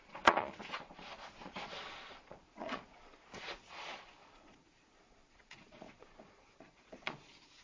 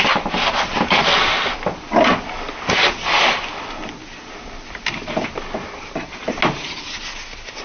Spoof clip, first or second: first